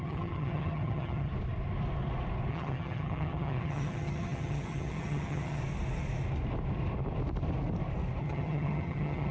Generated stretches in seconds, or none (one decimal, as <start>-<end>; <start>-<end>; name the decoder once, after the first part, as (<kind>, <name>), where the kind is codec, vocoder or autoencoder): 0.0-1.3 (vocoder, HiFi-GAN); 2.5-5.6; 8.2-9.3